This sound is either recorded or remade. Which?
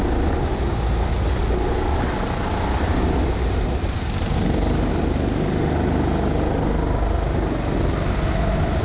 recorded